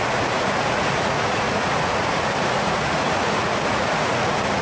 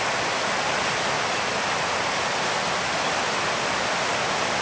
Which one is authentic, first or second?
second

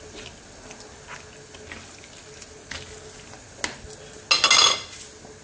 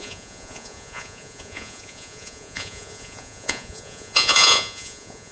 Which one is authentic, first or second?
first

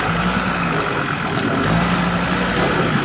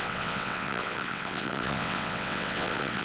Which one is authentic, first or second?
first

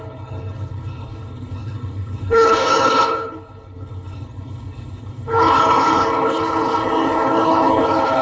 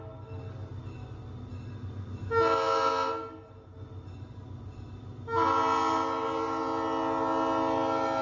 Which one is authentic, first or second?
second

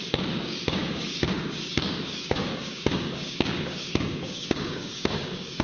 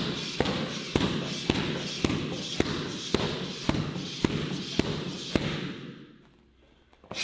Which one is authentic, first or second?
second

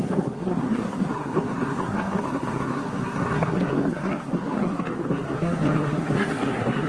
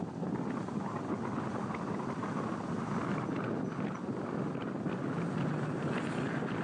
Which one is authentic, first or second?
second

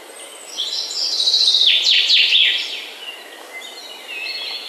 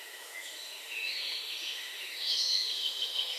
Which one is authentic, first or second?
first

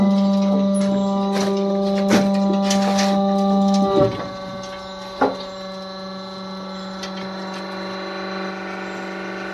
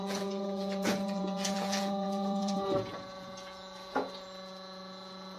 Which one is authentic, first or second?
first